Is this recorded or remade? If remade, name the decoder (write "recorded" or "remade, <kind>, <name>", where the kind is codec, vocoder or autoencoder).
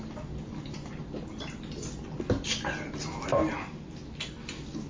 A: recorded